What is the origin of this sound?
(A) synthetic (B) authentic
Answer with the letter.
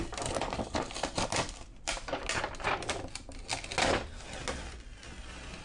B